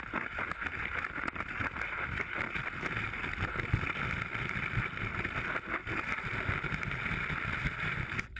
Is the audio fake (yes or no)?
no